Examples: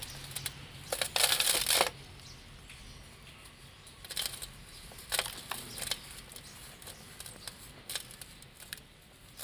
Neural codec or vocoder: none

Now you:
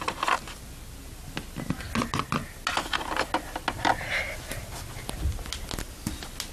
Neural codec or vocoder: none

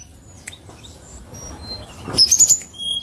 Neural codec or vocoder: none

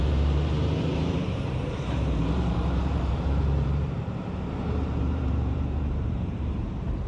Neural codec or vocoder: vocoder, BigVGAN v2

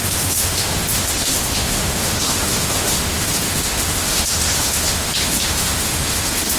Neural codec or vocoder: autoencoder, DAC-VAE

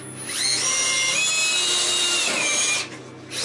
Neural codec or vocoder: none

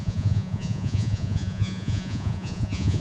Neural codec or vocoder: vocoder, Vocos